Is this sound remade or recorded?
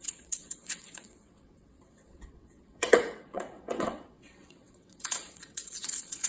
remade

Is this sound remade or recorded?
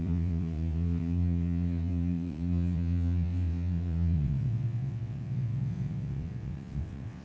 remade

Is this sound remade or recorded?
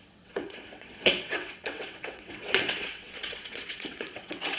remade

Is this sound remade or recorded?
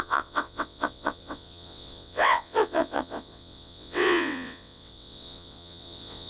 remade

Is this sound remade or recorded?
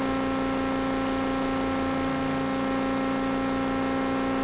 recorded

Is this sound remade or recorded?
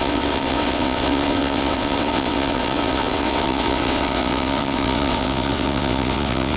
remade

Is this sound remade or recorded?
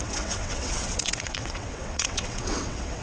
remade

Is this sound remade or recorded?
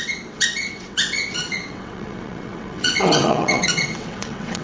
remade